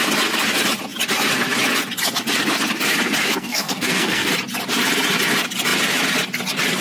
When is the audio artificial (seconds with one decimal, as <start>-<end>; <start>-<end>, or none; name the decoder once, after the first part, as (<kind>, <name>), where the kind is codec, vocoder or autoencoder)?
3.2-4.3 (codec, SNAC)